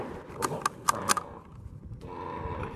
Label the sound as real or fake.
real